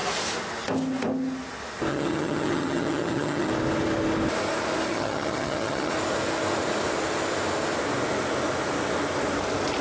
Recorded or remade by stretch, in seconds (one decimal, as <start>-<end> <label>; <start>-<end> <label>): 0.0-1.9 recorded; 1.9-3.5 remade; 3.5-4.9 recorded; 4.9-5.9 remade; 5.9-9.8 recorded